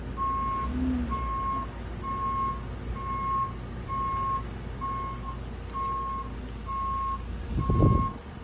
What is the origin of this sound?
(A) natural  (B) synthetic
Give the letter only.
A